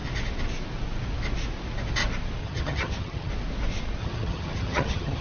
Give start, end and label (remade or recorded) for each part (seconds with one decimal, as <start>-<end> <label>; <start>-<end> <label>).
0.0-2.4 recorded; 2.4-3.3 remade; 3.3-4.0 recorded; 4.0-5.2 remade